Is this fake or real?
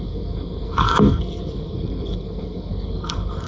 fake